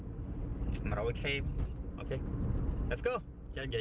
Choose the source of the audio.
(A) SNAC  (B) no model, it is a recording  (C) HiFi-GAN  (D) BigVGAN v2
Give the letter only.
B